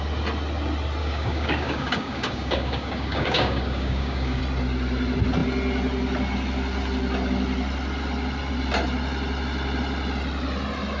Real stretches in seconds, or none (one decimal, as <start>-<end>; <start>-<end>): 0.0-1.0; 4.4-11.0